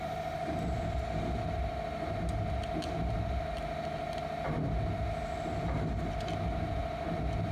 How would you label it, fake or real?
real